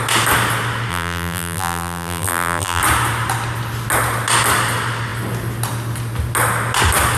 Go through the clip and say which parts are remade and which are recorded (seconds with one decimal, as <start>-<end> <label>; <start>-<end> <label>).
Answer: 0.0-0.9 recorded; 0.9-2.8 remade; 2.8-7.2 recorded